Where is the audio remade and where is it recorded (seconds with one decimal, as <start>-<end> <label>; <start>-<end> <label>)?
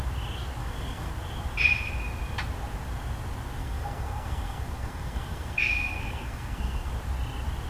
0.0-0.6 recorded; 0.6-1.1 remade; 1.1-3.6 recorded; 3.6-6.9 remade; 6.9-7.7 recorded